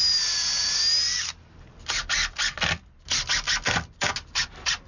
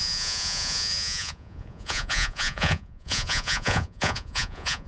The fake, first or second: second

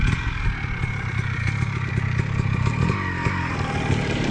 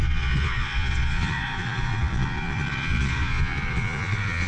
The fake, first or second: second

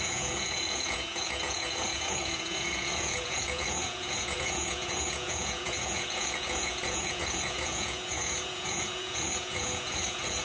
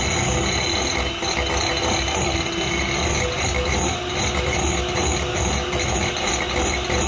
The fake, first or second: first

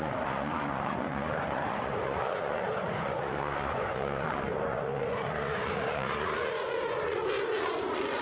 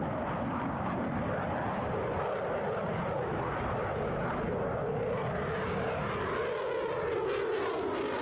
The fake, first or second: first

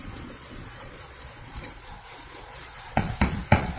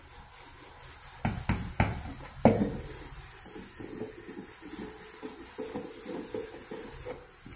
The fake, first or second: first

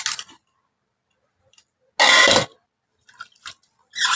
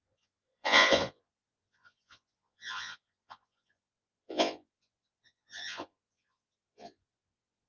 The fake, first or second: second